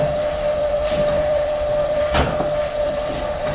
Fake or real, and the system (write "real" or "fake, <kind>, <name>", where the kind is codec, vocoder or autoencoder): fake, vocoder, BigVGAN v2